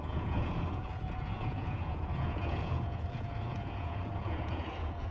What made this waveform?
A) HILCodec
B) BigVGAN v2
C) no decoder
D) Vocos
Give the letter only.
D